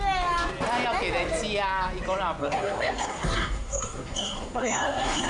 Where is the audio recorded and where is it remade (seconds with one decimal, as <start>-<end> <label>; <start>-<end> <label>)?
0.0-2.4 recorded; 2.4-5.3 remade